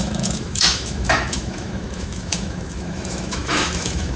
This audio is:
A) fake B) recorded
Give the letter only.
A